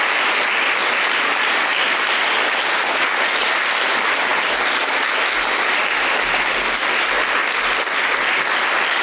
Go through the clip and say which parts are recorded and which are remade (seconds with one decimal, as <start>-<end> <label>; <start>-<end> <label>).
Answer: 0.0-9.0 recorded